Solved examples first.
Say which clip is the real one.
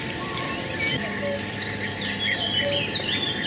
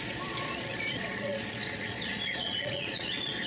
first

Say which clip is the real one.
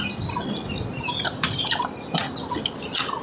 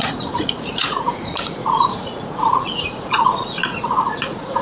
first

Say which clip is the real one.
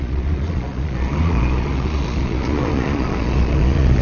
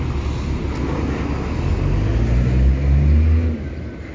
second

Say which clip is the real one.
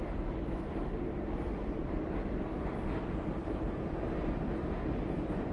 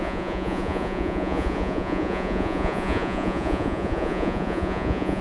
first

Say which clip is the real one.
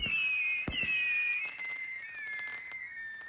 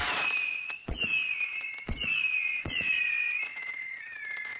first